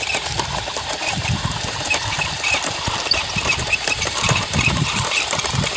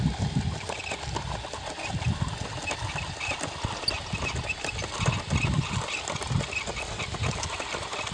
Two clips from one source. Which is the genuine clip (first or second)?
second